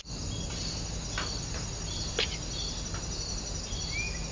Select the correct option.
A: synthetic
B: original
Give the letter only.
B